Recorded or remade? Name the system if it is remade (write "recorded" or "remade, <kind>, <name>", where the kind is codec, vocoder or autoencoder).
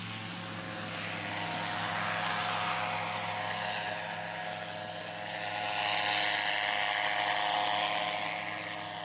recorded